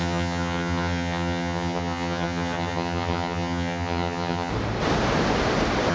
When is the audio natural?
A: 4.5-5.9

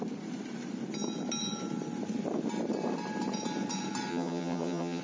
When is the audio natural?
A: 0.0-4.1

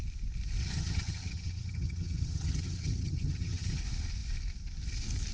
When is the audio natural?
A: 0.0-0.6; 3.8-5.3